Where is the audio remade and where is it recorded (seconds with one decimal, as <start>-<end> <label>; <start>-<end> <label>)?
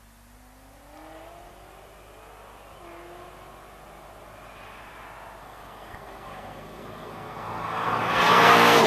0.0-5.4 recorded; 5.4-8.9 remade